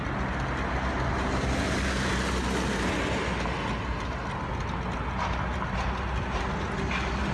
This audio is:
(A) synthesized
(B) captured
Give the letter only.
B